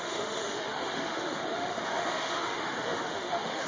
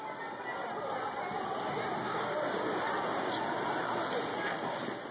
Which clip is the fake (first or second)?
first